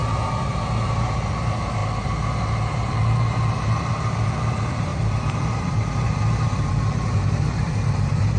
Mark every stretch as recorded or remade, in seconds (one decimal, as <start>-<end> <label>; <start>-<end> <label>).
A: 0.0-8.4 remade